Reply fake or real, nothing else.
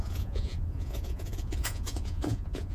fake